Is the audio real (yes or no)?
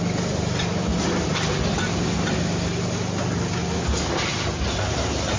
yes